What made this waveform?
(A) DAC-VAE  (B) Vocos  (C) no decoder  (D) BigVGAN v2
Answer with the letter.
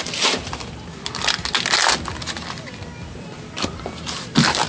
C